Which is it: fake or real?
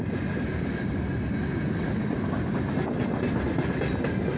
real